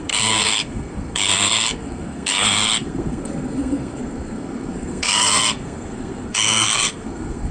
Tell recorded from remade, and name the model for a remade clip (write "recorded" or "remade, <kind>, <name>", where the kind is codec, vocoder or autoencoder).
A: remade, codec, SNAC